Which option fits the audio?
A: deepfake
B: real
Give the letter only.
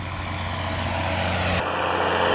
B